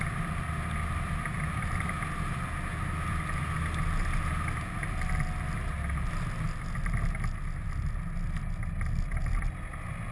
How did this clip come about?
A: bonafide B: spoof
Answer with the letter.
A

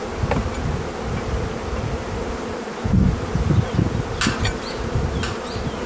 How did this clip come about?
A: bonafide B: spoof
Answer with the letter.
A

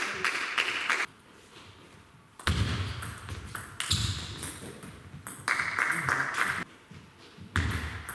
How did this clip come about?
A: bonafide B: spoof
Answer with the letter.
A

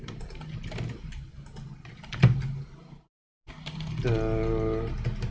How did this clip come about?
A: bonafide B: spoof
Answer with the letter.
A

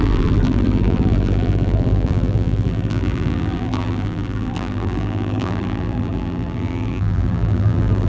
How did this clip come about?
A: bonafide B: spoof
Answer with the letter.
B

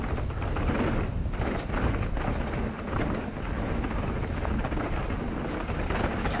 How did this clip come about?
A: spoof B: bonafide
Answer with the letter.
B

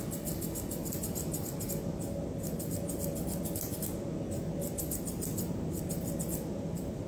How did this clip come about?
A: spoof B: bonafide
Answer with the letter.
B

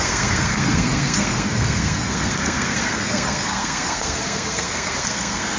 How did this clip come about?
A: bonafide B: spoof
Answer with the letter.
B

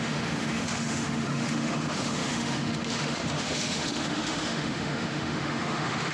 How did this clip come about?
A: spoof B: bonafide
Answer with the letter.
A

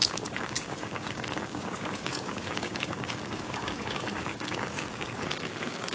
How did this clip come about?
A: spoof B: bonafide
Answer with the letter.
A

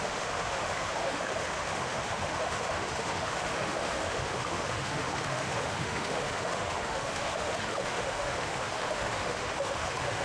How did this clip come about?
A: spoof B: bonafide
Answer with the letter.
A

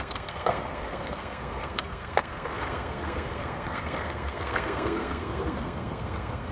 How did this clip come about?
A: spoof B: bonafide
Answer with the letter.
A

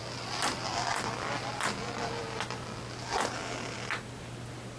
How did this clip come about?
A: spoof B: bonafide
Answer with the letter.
B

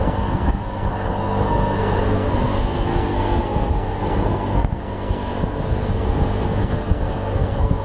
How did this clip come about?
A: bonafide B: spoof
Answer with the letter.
B